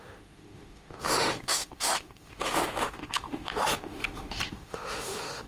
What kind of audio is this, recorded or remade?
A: remade